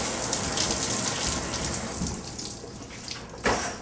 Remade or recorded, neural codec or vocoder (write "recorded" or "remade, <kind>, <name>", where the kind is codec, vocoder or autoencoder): recorded